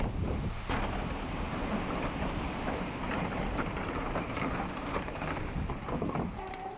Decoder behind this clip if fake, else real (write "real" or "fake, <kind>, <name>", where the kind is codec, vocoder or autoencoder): fake, vocoder, BigVGAN v2